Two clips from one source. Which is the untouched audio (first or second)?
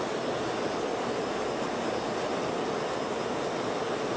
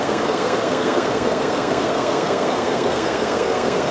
first